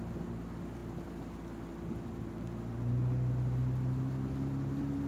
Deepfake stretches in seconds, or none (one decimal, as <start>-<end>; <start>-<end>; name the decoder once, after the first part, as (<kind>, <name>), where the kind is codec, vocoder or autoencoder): none